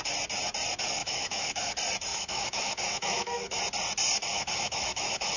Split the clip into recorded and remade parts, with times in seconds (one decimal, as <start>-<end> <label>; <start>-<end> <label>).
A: 0.0-1.0 recorded; 1.0-1.7 remade; 1.7-2.1 recorded; 2.1-3.6 remade; 3.6-4.3 recorded; 4.3-5.4 remade